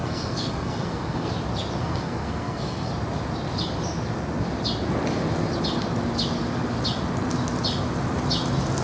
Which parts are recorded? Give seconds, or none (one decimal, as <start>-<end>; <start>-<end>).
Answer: 1.3-1.8; 2.9-8.8